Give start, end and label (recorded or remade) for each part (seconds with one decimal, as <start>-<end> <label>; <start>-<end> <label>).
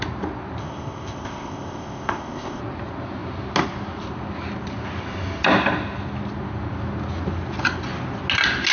0.0-0.6 recorded; 0.6-2.6 remade; 2.6-8.7 recorded